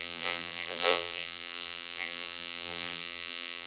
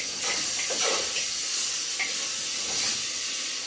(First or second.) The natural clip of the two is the second